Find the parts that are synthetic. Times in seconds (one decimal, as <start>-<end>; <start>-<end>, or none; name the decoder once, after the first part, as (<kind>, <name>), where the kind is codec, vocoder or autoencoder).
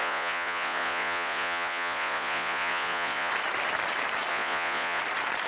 0.0-3.3 (vocoder, Vocos); 4.3-5.0